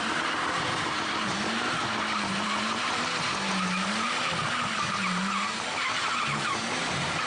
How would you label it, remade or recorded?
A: remade